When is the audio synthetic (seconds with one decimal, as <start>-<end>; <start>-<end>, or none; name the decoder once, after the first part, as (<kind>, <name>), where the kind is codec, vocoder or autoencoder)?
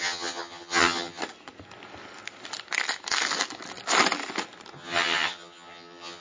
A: 0.0-1.2 (vocoder, HiFi-GAN); 4.7-6.2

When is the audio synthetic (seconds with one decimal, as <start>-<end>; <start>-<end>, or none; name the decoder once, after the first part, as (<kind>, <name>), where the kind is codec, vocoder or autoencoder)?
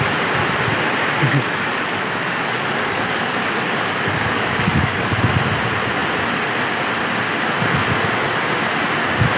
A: 1.2-5.1 (codec, DAC)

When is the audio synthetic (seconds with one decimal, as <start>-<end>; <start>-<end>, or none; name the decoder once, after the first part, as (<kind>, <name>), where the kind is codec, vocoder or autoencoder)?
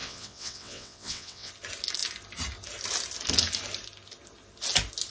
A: 0.0-1.5 (vocoder, WaveNeXt)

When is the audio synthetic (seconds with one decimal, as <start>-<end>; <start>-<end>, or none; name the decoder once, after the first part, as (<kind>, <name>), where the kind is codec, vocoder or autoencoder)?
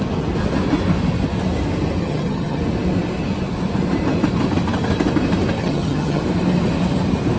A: 2.0-2.6 (vocoder, HiFi-GAN); 5.6-6.2